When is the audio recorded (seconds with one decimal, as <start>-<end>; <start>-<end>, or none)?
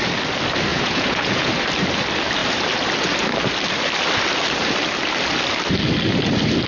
0.0-0.7; 1.5-6.7